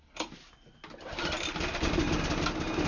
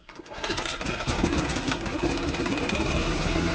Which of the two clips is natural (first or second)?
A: first